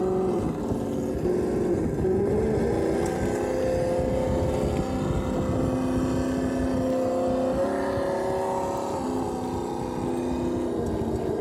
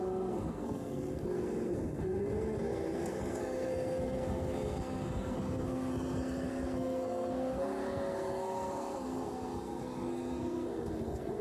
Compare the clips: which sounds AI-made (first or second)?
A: second